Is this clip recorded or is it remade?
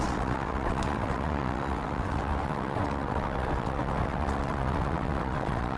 remade